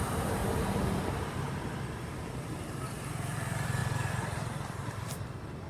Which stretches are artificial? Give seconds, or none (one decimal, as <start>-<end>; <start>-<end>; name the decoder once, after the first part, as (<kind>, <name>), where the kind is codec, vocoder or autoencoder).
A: 0.0-0.4 (vocoder, BigVGAN v2); 2.5-5.7